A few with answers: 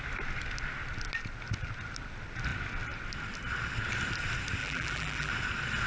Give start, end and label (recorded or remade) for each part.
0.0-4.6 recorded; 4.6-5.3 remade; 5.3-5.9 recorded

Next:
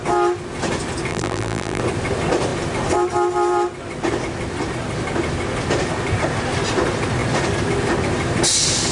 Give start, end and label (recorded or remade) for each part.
0.0-1.1 recorded; 1.1-1.8 remade; 1.8-8.9 recorded

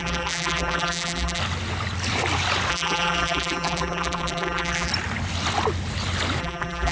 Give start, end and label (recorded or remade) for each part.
0.0-1.4 remade; 1.4-2.7 recorded; 2.7-4.9 remade; 4.9-6.4 recorded; 6.4-6.9 remade

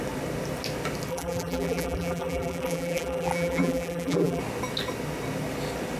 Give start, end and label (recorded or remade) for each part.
0.0-1.1 recorded; 1.1-4.4 remade; 4.4-6.0 recorded